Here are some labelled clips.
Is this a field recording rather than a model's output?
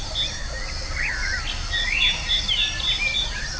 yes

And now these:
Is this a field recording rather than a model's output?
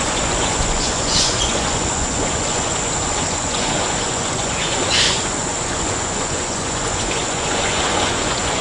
no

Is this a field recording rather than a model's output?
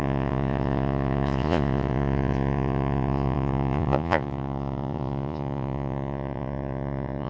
no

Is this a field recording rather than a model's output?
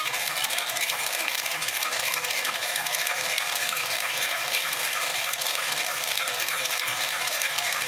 no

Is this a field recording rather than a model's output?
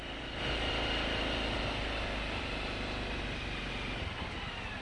yes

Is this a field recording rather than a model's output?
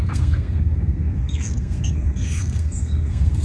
no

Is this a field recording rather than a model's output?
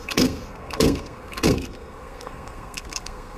no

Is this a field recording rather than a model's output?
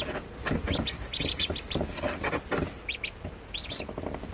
yes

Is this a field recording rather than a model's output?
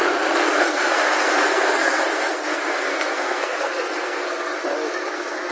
no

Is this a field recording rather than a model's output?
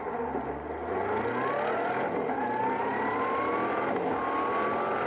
yes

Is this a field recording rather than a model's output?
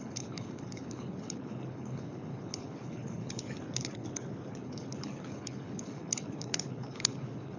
no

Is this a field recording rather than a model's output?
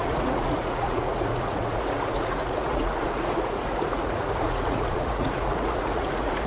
no